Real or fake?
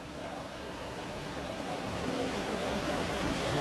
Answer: fake